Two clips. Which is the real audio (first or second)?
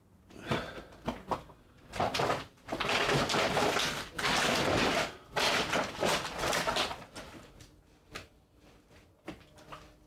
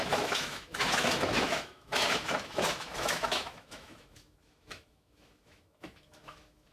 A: first